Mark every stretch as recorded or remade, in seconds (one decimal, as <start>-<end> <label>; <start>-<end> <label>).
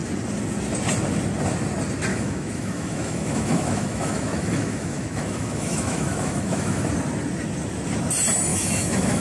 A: 0.0-2.1 recorded; 2.1-6.9 remade; 6.9-8.5 recorded; 8.5-9.2 remade